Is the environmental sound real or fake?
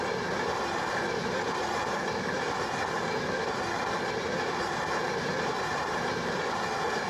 real